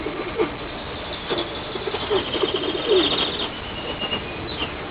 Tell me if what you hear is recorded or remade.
recorded